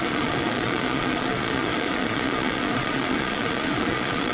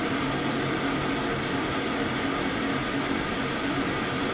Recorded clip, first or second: second